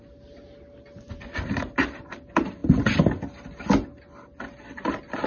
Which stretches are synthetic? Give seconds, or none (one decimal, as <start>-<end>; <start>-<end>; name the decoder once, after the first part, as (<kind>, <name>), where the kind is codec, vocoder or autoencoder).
none